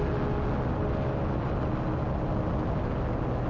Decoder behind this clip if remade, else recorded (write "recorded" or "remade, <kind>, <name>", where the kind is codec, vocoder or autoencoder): recorded